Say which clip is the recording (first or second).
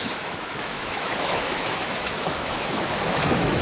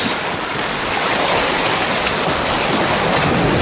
second